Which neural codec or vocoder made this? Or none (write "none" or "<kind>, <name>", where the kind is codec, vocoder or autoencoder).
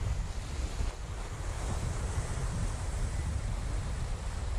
none